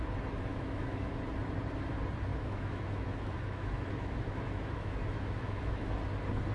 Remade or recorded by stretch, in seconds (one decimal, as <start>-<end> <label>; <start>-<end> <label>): 0.0-0.5 recorded; 0.5-1.1 remade; 1.1-2.3 recorded; 2.3-5.9 remade; 5.9-6.5 recorded